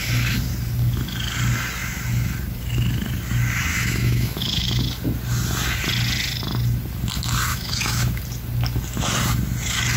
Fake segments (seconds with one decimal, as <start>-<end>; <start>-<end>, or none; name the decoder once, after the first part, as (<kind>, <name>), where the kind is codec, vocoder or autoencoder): 3.7-4.8 (autoencoder, DAC-VAE); 7.5-8.2